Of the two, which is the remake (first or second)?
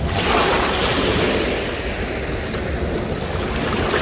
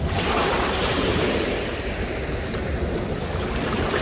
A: second